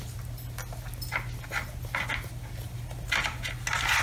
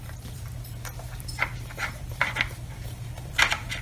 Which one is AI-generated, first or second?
second